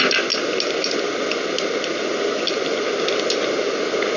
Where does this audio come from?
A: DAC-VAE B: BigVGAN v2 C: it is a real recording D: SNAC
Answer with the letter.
C